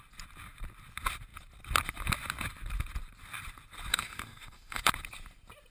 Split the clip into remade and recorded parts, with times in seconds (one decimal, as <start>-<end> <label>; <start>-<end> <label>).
0.0-3.9 recorded; 3.9-4.8 remade; 4.8-5.7 recorded